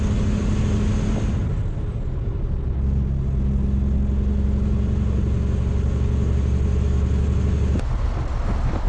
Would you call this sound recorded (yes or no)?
yes